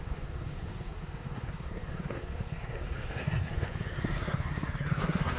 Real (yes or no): no